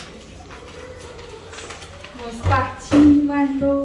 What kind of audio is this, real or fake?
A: real